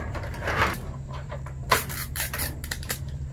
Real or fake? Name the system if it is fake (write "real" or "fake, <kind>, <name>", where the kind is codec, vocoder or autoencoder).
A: fake, vocoder, BigVGAN v2